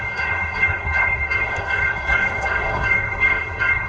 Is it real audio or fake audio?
fake